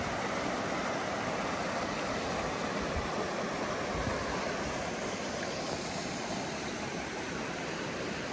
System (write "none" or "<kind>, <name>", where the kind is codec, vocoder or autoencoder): none